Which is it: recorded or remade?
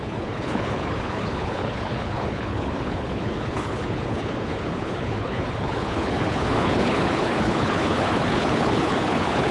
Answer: remade